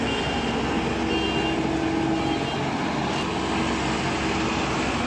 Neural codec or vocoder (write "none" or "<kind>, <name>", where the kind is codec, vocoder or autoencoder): none